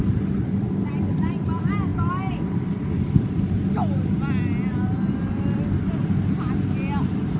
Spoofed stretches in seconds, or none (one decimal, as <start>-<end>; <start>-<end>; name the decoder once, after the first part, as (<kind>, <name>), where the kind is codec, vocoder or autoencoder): none